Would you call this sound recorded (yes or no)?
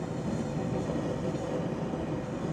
yes